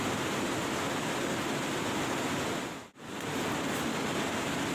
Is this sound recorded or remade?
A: recorded